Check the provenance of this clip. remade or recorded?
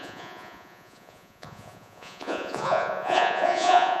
remade